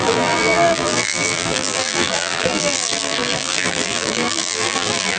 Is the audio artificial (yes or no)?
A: yes